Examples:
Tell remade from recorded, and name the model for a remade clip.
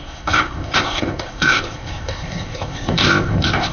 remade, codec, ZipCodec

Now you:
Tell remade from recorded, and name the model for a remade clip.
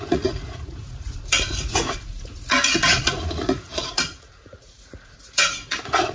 remade, vocoder, Vocos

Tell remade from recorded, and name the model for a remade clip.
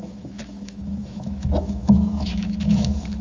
remade, autoencoder, DAC-VAE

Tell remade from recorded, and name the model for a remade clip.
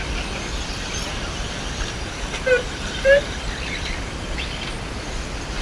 recorded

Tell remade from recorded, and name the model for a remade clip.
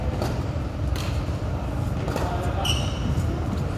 recorded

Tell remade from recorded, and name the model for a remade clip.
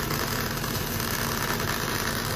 recorded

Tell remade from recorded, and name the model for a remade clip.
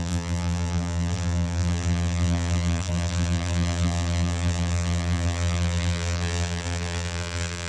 remade, vocoder, BigVGAN v2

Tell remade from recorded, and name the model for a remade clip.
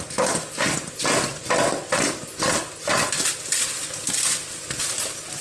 recorded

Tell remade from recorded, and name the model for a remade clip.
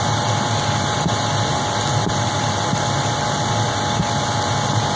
recorded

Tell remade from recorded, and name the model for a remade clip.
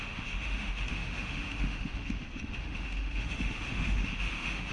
remade, autoencoder, DAC-VAE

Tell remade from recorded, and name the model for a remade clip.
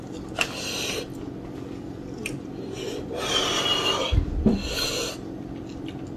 recorded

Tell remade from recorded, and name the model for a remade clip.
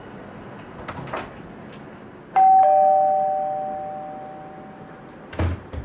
recorded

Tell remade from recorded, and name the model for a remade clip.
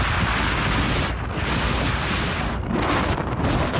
recorded